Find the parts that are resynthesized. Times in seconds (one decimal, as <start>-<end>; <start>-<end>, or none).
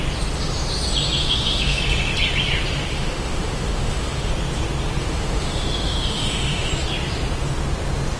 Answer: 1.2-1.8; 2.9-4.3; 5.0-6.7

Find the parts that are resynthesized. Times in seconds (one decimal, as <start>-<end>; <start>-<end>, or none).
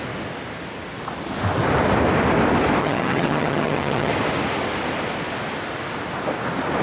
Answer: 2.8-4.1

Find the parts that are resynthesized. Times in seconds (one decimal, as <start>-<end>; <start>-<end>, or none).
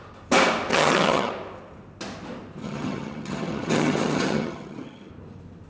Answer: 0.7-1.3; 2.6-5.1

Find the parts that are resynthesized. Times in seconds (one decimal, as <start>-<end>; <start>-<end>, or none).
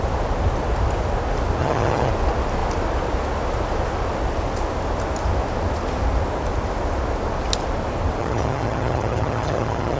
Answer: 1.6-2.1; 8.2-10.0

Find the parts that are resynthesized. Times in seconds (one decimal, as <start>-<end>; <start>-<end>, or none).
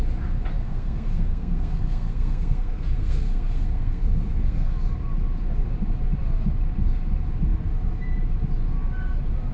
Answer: 0.6-4.7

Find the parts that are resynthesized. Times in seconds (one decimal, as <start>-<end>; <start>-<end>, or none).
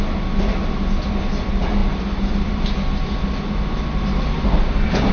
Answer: none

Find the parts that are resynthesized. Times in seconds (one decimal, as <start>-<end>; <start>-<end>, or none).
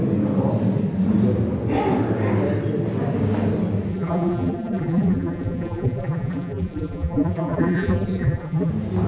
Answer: 3.9-8.7